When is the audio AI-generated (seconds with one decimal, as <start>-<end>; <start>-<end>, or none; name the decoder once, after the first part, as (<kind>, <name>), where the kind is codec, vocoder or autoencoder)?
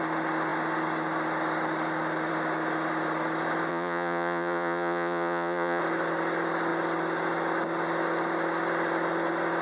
3.7-5.8 (vocoder, Vocos)